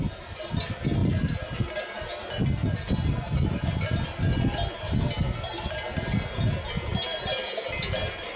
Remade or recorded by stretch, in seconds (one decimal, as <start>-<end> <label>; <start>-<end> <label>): 0.0-8.4 recorded